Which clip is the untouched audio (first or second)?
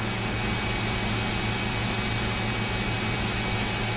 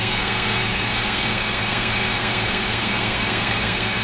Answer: first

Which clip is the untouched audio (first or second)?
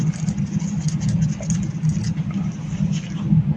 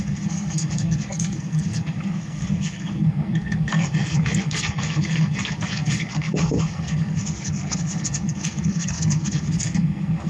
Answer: first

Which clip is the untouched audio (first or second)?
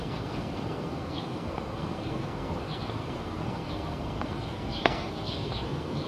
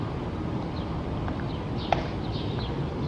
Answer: second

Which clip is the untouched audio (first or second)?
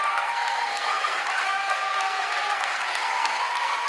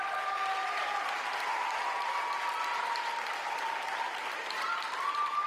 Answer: second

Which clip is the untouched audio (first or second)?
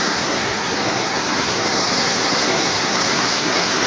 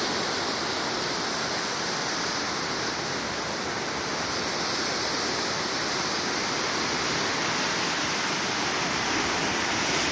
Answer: second